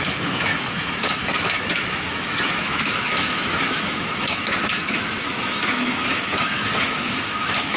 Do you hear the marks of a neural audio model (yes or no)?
yes